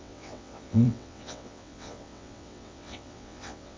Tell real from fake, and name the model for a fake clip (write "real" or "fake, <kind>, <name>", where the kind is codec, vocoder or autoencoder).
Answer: fake, vocoder, WaveNeXt